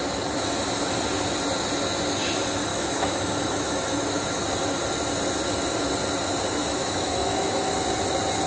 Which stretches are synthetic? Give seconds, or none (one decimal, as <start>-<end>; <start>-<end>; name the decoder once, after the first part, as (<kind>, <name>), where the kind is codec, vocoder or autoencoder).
2.7-4.4 (autoencoder, DAC-VAE); 6.6-7.7